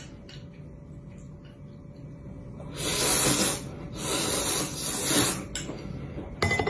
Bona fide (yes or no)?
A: yes